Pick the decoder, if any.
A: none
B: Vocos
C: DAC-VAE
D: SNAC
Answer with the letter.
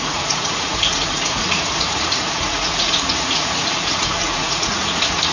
B